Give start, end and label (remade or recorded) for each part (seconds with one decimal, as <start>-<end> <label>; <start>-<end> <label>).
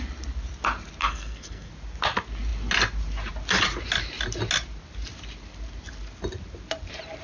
0.0-1.0 recorded; 1.0-1.7 remade; 1.7-7.2 recorded